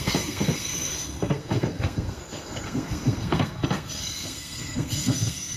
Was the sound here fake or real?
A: fake